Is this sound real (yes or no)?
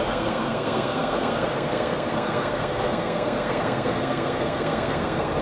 no